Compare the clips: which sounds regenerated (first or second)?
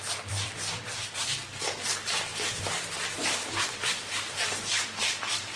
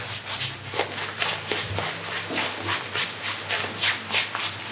first